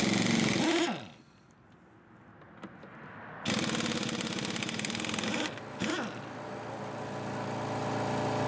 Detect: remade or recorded recorded